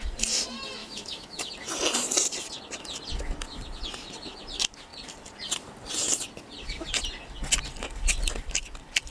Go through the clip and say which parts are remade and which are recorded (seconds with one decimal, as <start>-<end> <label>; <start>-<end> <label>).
0.0-0.8 recorded; 0.8-1.5 remade; 1.5-9.1 recorded